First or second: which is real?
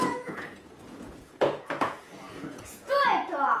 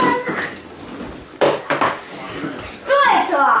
second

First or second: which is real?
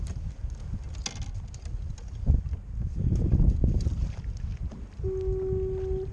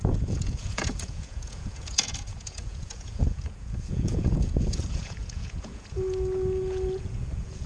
first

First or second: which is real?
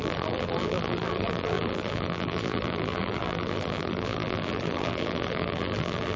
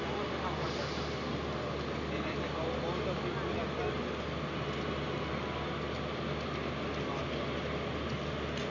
second